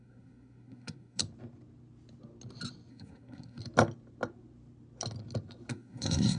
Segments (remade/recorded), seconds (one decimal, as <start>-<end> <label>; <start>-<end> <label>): 0.0-1.2 remade; 1.2-2.9 recorded; 2.9-3.6 remade; 3.6-5.7 recorded; 5.7-6.4 remade